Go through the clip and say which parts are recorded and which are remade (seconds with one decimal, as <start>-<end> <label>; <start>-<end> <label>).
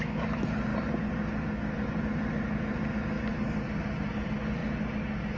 0.0-5.4 recorded